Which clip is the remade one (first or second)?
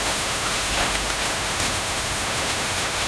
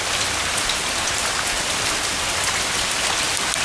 first